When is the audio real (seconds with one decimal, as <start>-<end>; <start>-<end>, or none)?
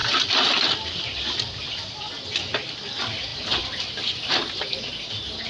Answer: 2.1-3.3; 4.3-5.5